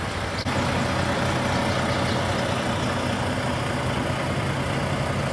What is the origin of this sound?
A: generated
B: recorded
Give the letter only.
B